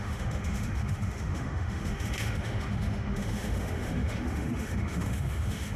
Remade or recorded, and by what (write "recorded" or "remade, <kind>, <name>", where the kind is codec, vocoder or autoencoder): remade, autoencoder, DAC-VAE